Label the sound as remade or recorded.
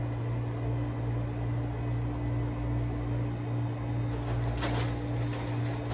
recorded